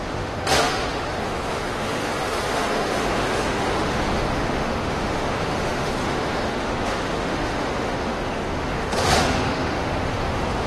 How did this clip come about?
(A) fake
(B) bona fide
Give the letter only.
A